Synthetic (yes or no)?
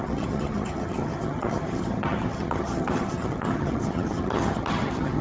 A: yes